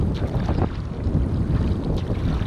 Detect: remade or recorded recorded